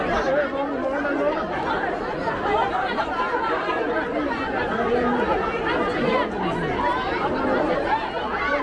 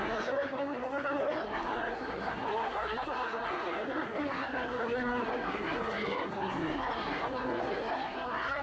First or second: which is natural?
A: first